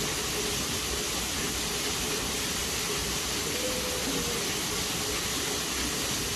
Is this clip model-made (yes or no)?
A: no